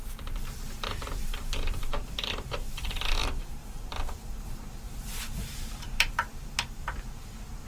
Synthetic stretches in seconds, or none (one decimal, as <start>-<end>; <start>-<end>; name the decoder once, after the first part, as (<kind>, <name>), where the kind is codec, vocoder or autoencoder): 0.0-7.7 (vocoder, BigVGAN v2)